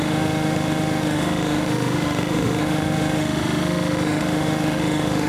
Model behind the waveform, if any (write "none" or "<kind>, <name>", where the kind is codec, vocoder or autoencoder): autoencoder, DAC-VAE